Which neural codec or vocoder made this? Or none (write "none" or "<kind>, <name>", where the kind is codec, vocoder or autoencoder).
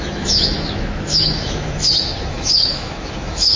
autoencoder, DAC-VAE